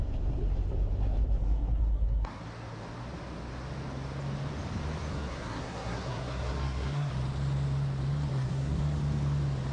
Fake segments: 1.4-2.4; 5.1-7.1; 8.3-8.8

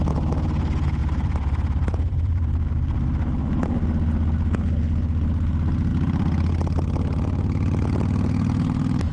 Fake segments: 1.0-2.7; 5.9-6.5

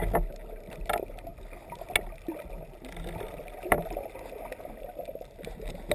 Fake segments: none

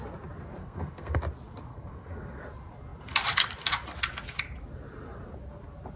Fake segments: 0.6-1.2; 1.7-2.4

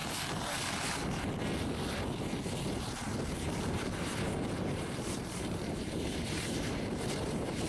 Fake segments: 3.6-4.1; 5.5-7.7

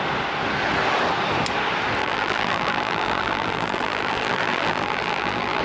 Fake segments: 2.0-5.6